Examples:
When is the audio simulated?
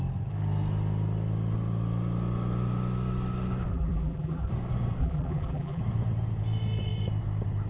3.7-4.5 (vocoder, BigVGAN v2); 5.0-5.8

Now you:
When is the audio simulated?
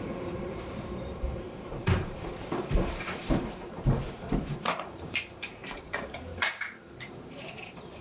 0.0-8.0 (vocoder, BigVGAN v2)